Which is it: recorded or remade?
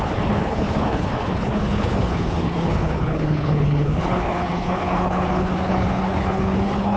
remade